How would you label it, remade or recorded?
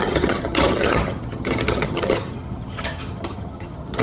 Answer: remade